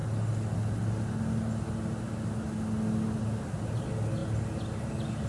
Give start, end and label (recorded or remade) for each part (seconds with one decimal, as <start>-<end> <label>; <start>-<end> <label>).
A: 0.0-5.3 recorded